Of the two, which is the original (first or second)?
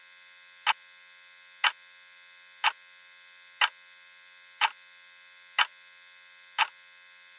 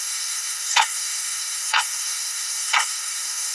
first